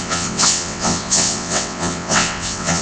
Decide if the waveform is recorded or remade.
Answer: remade